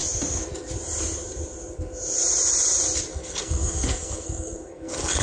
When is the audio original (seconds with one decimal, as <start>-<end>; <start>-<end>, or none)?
0.0-3.1